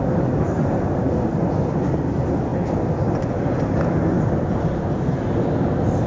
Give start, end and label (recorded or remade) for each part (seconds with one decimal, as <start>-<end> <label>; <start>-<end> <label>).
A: 0.0-6.1 recorded